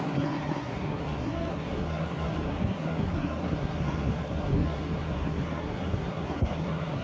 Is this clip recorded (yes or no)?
no